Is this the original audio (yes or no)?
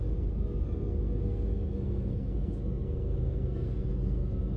no